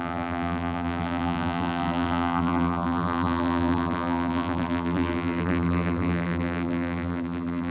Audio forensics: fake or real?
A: fake